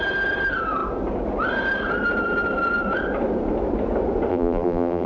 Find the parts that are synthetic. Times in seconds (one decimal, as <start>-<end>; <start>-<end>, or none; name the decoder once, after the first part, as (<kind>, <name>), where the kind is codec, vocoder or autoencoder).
4.3-5.1 (vocoder, BigVGAN v2)